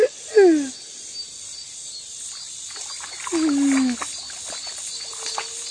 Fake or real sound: real